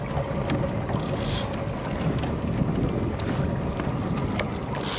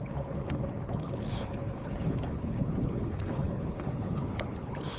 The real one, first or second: first